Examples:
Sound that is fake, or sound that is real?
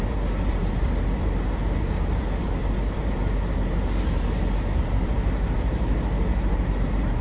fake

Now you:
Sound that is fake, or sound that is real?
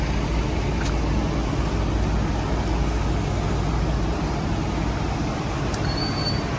real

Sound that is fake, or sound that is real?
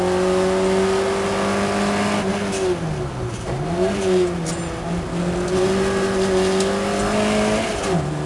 real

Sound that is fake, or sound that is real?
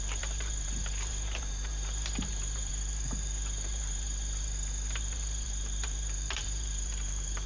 fake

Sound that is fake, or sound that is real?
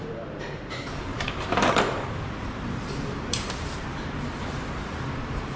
fake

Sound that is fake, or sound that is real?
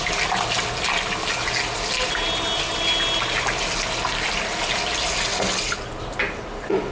real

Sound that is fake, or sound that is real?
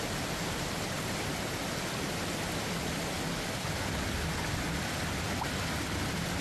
real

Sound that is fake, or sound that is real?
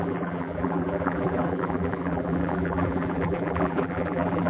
fake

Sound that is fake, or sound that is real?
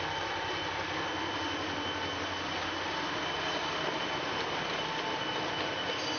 fake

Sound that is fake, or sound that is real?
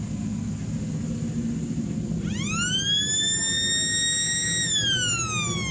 real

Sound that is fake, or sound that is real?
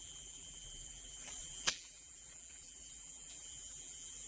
fake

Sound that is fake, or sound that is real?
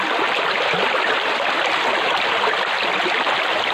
real